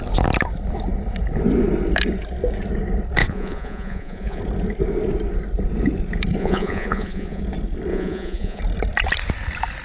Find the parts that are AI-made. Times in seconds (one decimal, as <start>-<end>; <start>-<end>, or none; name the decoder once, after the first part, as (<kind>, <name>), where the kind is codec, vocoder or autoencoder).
3.2-4.4 (vocoder, Vocos); 6.4-7.4; 7.9-8.6